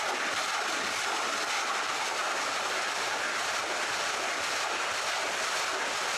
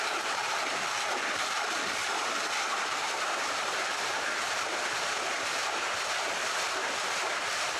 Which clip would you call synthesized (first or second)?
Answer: second